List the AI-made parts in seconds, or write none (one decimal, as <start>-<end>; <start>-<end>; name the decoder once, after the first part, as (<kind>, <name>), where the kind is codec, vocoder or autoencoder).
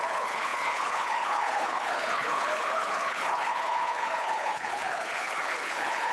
0.0-6.1 (codec, HILCodec)